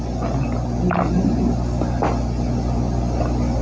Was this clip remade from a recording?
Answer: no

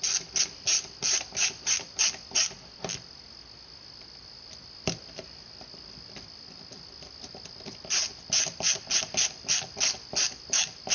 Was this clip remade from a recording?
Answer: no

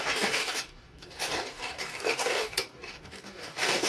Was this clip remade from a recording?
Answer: yes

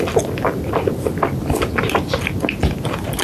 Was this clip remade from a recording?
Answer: no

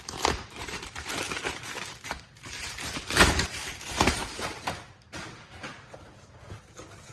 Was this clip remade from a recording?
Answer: yes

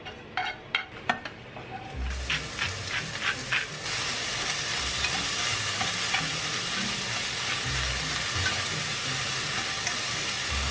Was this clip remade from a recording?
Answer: no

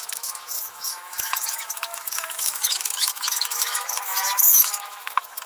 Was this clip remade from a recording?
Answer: yes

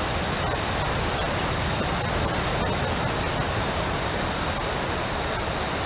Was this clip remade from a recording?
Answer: no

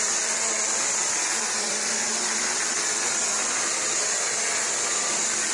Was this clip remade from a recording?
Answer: yes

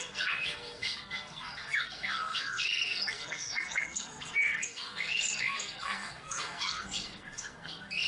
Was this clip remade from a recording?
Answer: yes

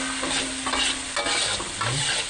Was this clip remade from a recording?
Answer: no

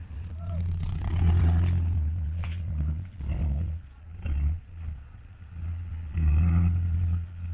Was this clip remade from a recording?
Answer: yes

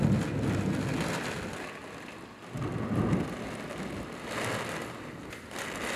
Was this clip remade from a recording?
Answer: no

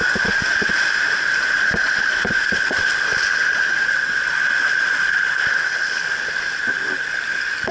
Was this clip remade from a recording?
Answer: no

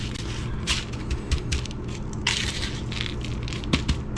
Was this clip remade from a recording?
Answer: no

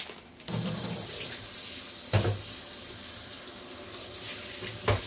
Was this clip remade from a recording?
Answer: no